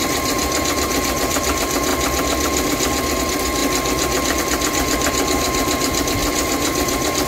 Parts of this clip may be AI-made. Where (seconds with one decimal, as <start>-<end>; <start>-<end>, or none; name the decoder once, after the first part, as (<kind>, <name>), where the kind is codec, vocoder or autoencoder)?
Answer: 0.0-1.9 (vocoder, BigVGAN v2); 3.2-3.6; 4.4-7.3